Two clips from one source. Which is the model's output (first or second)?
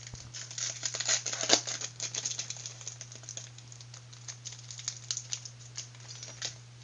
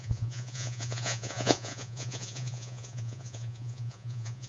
second